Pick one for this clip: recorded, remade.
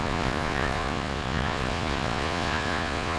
remade